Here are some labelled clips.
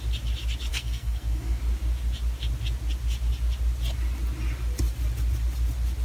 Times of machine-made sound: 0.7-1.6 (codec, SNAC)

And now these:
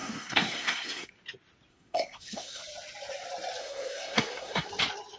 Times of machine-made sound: 0.0-1.1 (codec, SNAC); 1.7-2.6; 3.6-4.7

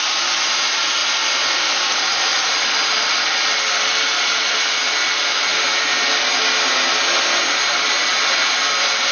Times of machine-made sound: 2.3-4.5 (vocoder, BigVGAN v2)

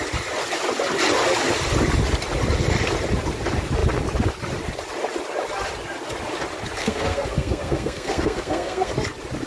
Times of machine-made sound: 6.8-8.9 (codec, SNAC)

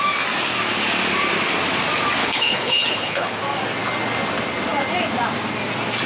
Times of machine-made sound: 2.2-3.4 (codec, HILCodec)

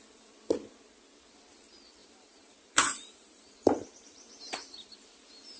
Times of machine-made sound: 2.0-4.3 (vocoder, BigVGAN v2)